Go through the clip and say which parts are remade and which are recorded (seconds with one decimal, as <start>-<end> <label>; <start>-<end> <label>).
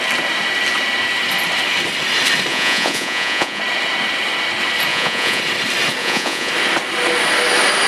0.0-2.5 recorded; 2.5-3.6 remade; 3.6-4.9 recorded; 4.9-5.4 remade; 5.4-6.0 recorded; 6.0-6.5 remade; 6.5-7.9 recorded